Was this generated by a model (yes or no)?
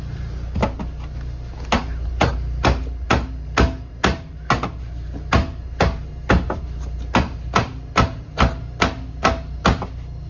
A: no